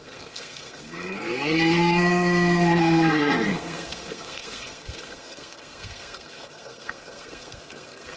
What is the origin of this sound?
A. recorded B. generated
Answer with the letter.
B